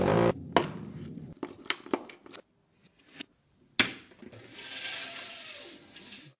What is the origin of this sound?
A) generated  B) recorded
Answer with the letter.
B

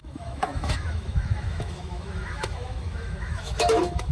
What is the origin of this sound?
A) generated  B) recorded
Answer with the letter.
A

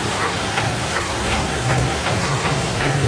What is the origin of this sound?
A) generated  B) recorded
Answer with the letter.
A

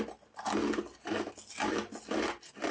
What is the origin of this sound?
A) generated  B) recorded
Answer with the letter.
B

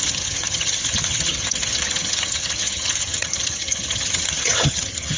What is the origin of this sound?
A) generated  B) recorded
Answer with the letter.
A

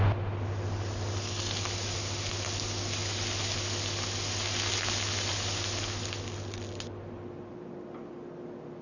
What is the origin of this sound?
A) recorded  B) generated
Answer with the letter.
A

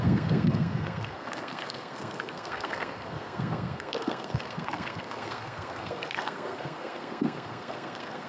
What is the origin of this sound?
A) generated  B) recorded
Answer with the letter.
A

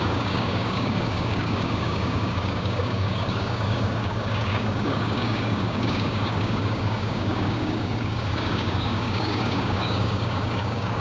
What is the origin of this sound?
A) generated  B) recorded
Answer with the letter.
A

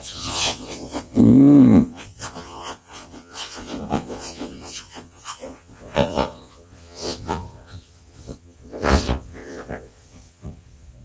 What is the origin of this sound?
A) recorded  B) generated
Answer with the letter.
B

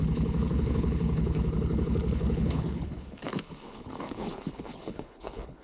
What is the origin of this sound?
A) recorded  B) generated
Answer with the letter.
B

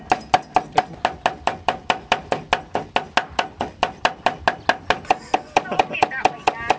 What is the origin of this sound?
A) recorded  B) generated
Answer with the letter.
A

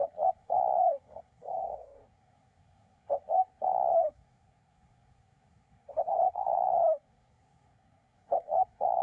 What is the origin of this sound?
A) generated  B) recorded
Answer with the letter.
A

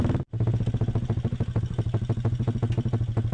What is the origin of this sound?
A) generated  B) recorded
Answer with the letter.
B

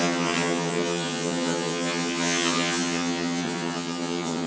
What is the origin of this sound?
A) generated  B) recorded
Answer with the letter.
A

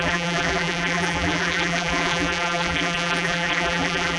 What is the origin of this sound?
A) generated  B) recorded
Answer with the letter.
A